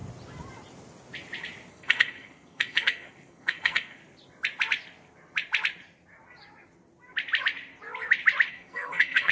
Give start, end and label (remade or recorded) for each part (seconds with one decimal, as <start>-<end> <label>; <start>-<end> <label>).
0.0-1.7 recorded; 1.7-4.0 remade; 4.0-8.5 recorded; 8.5-9.3 remade